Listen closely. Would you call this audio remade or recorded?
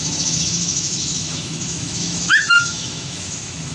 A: remade